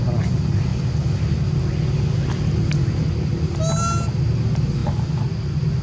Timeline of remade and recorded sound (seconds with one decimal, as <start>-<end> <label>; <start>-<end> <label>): 0.0-5.8 recorded